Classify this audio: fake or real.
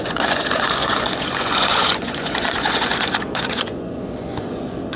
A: fake